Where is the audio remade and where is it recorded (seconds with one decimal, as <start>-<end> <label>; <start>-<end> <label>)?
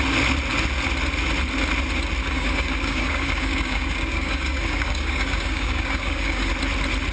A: 0.0-2.2 recorded; 2.2-6.5 remade; 6.5-7.1 recorded